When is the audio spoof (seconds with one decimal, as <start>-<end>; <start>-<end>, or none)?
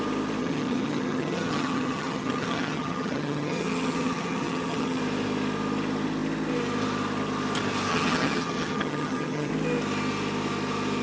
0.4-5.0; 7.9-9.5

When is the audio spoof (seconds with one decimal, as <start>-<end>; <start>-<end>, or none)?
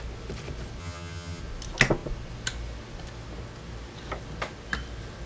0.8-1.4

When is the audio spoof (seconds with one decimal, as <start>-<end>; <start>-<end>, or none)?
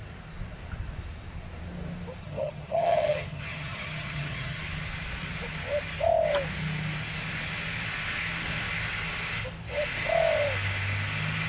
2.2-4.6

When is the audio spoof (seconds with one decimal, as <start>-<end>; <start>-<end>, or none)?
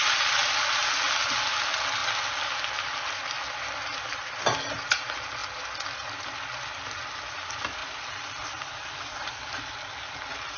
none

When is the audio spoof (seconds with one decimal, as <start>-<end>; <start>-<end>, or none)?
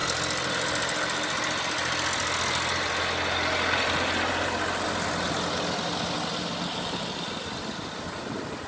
none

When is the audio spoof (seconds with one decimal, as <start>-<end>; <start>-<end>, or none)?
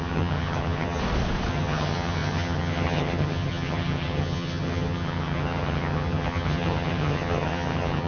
0.0-1.0; 1.5-8.1